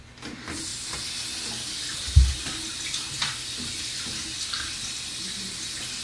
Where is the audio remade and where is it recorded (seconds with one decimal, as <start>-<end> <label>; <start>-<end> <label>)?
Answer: 0.0-6.0 recorded